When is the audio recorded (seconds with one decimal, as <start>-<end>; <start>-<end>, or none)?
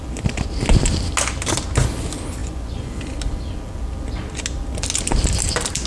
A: 0.0-2.4; 3.0-5.9